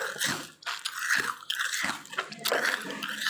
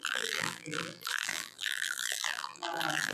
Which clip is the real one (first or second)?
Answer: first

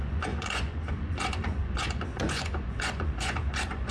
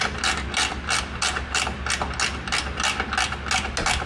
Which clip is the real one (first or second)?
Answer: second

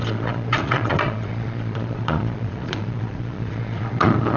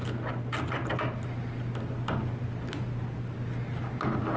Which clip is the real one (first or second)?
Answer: second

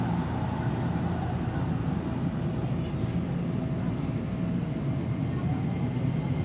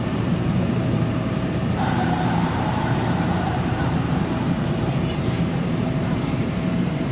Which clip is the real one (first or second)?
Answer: first